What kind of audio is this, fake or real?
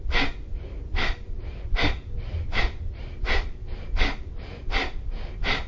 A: real